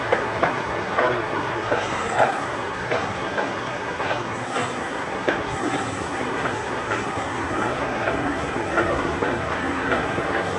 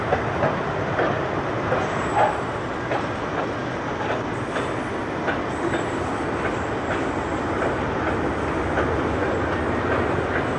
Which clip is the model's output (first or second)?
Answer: first